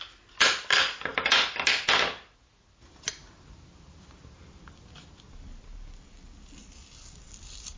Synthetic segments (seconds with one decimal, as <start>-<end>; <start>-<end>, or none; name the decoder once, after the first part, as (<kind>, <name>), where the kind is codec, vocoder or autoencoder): none